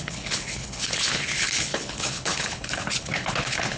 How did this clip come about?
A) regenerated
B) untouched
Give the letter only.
A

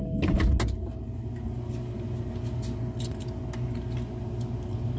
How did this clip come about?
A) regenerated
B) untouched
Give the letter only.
B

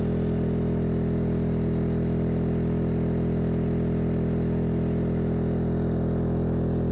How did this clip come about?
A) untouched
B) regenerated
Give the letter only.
A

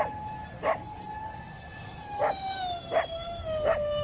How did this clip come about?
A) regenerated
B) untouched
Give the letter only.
B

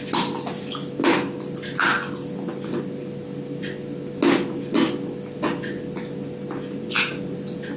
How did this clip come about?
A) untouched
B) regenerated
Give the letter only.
A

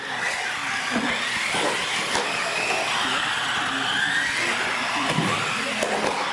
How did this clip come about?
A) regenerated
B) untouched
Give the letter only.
B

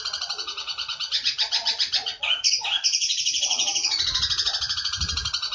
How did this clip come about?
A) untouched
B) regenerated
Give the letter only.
B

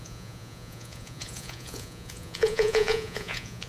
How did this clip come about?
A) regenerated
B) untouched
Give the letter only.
A